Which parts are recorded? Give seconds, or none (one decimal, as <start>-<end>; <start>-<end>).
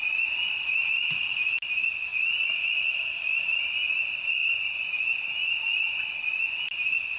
0.0-2.1; 3.8-7.2